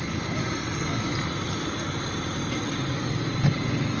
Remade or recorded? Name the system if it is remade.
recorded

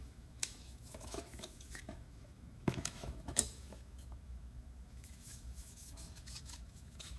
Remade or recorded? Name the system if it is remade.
remade, autoencoder, DAC-VAE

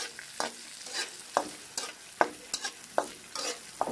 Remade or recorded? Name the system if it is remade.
recorded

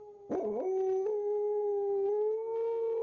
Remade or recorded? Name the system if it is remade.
recorded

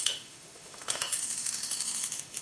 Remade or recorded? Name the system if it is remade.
remade, autoencoder, DAC-VAE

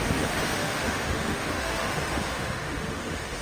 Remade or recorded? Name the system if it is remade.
remade, autoencoder, DAC-VAE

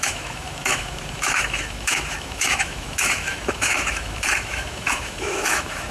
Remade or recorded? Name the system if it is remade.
remade, autoencoder, DAC-VAE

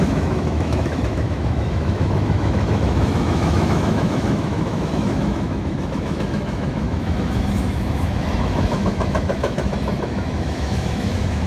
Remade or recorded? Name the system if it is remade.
remade, autoencoder, DAC-VAE